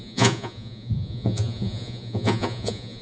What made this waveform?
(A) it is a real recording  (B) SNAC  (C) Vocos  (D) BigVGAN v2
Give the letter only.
C